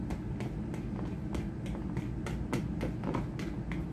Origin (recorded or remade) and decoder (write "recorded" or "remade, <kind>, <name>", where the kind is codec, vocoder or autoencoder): recorded